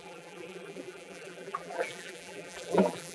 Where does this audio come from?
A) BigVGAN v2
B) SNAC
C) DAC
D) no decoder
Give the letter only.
A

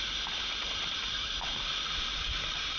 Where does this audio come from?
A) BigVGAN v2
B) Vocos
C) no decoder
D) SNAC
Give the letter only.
A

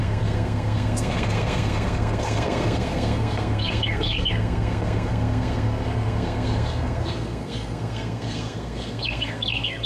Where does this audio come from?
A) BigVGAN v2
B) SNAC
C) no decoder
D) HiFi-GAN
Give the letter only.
B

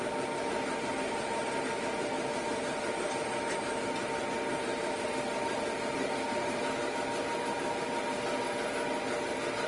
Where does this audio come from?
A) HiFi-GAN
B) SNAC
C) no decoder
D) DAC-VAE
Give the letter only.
C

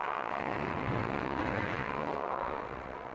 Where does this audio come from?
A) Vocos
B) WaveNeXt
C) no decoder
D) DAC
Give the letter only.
B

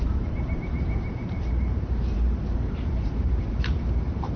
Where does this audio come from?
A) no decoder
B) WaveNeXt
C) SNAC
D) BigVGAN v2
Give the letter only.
D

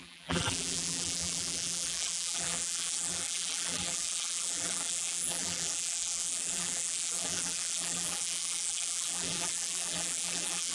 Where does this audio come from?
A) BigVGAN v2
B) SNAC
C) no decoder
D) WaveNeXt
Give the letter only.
A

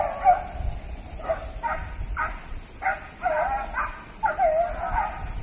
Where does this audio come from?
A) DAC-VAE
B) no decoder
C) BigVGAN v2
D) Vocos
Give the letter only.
B